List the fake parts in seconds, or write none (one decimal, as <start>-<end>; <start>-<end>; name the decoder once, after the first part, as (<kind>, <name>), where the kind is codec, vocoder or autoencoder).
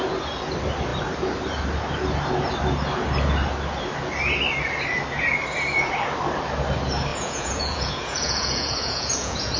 7.1-9.6 (vocoder, Vocos)